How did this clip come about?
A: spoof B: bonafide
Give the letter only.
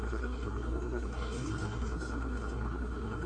A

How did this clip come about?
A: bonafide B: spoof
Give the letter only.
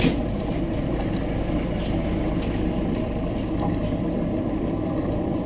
A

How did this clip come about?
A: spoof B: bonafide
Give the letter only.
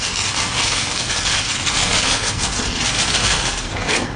A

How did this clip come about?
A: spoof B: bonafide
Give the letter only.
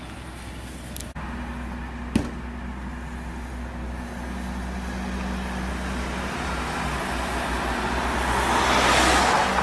B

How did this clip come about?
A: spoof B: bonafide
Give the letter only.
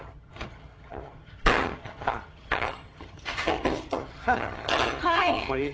A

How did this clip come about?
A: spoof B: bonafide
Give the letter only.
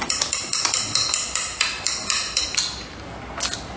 B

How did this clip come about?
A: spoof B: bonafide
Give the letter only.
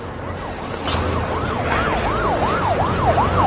B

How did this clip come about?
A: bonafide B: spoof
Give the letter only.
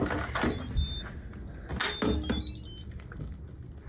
A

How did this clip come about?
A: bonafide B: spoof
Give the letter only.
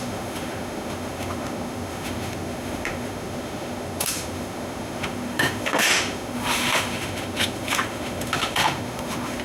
B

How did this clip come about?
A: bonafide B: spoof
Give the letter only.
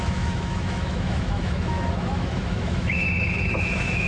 B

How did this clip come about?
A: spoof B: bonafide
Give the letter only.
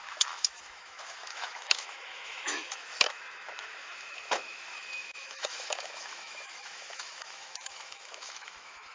A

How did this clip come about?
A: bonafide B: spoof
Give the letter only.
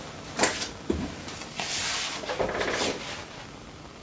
A